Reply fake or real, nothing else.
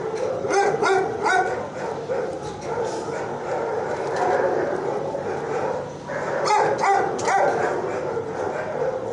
real